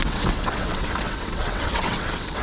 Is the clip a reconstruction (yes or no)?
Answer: yes